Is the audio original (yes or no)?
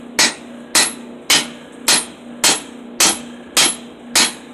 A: yes